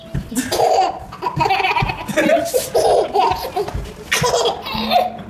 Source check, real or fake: real